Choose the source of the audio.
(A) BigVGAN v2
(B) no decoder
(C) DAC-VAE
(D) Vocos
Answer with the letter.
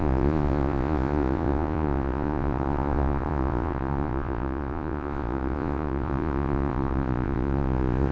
D